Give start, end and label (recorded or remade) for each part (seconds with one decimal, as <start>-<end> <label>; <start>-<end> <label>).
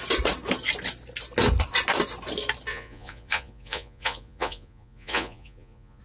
0.0-2.7 recorded; 2.7-6.0 remade